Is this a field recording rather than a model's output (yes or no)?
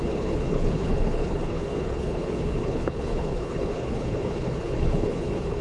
no